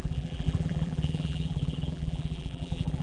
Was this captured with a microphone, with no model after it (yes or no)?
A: no